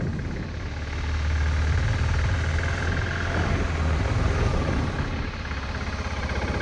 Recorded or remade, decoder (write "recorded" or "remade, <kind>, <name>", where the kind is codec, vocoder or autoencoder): recorded